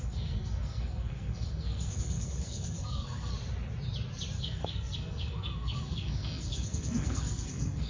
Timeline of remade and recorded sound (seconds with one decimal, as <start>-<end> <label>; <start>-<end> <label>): 0.0-3.3 remade; 3.3-4.4 recorded; 4.4-7.9 remade